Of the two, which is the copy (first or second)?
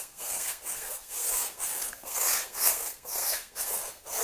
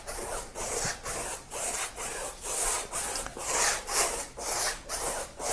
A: first